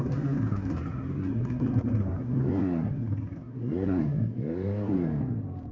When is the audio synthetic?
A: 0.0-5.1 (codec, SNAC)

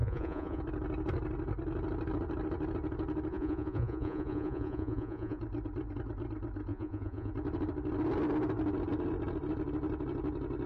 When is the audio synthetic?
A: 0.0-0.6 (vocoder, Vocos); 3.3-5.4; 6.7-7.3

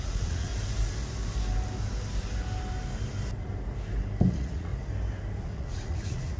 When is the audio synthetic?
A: 0.0-0.5 (vocoder, Vocos); 4.3-4.7; 5.4-6.4